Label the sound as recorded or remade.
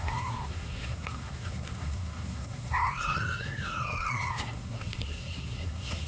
remade